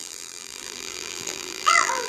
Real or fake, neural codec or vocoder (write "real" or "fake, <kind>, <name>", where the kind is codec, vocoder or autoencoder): fake, vocoder, BigVGAN v2